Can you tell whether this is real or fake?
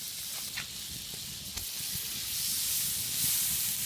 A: real